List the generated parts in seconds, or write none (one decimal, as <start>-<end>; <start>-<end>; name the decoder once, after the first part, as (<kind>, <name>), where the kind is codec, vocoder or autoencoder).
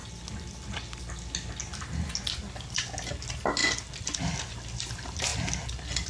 none